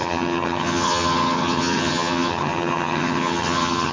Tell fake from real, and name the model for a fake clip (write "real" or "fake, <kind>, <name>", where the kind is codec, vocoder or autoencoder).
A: fake, vocoder, HiFi-GAN